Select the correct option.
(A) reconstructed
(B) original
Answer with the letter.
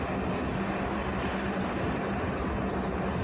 B